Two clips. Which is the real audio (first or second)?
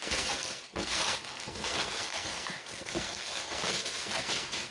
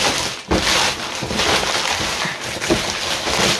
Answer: second